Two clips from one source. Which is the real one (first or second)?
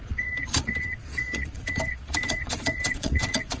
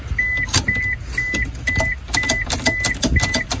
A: second